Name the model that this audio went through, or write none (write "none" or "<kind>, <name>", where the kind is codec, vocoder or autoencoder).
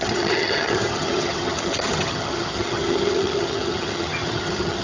vocoder, HiFi-GAN